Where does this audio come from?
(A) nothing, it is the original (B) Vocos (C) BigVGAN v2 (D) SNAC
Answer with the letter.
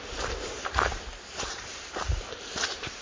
C